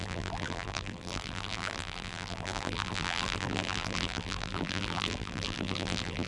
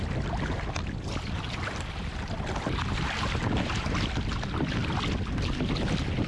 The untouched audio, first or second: second